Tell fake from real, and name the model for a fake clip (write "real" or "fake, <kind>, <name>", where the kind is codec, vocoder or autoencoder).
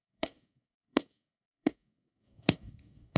fake, codec, DAC